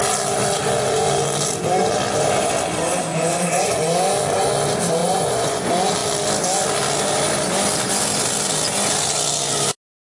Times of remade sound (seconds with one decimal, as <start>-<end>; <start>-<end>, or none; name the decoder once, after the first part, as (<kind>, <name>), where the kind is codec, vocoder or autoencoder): 3.1-3.8 (vocoder, Vocos); 5.0-5.6